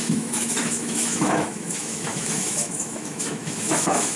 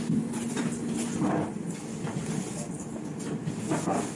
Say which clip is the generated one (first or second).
first